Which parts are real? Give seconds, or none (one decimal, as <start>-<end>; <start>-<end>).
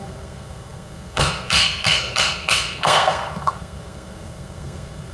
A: none